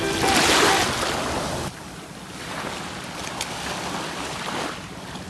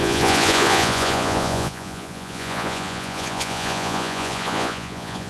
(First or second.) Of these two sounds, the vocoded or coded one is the second